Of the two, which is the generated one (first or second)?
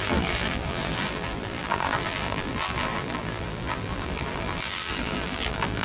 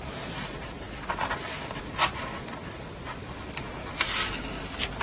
first